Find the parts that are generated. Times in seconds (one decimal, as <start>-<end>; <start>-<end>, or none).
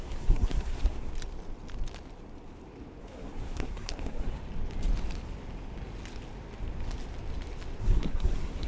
0.0-1.1; 3.0-4.4; 7.8-8.7